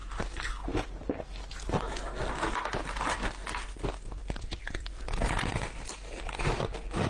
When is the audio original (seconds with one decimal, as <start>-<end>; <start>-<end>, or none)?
0.0-4.2; 5.0-5.5; 6.4-7.1